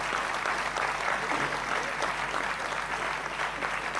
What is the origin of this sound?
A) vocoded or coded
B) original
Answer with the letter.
B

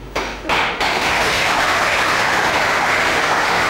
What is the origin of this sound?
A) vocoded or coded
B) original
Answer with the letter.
A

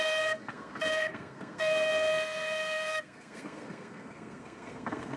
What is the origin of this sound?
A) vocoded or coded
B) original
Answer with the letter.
A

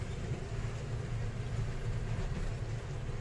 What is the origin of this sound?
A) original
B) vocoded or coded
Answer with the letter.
A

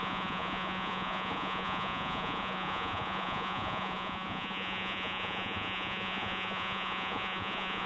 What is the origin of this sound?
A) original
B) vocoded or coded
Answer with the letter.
B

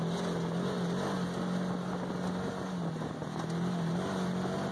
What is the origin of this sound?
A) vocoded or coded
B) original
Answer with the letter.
B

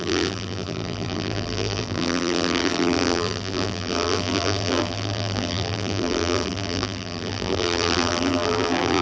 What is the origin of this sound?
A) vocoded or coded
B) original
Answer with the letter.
A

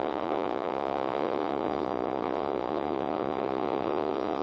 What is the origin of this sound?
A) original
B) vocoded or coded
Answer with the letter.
B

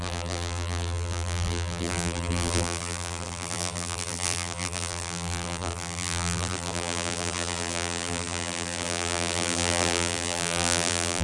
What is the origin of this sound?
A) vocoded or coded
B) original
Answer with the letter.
A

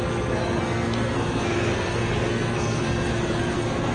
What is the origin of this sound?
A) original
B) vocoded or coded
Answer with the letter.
B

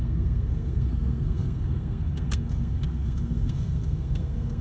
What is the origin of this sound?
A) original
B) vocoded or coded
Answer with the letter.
B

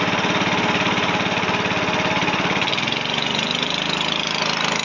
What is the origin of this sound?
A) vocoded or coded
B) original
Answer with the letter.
B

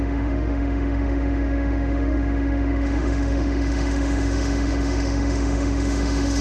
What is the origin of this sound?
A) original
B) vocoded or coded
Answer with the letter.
B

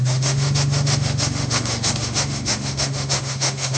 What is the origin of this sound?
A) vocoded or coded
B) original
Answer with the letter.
A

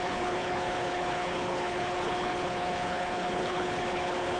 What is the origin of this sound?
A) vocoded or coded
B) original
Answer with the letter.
A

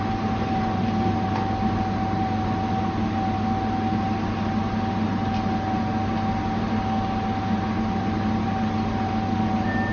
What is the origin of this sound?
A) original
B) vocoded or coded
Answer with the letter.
A